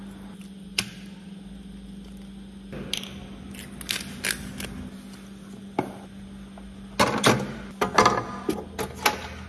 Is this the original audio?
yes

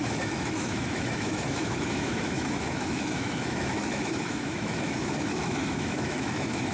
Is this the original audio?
no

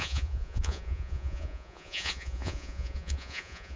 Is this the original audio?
no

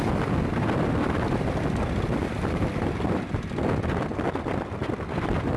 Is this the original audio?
yes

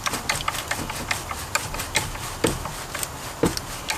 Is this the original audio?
yes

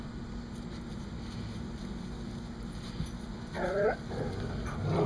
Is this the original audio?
yes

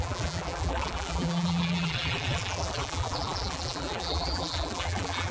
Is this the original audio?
no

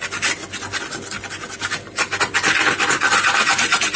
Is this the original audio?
yes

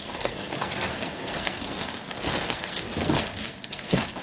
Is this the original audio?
no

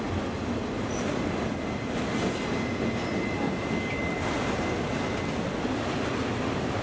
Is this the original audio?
yes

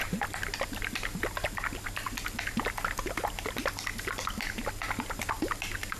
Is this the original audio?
yes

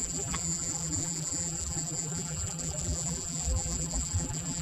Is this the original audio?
no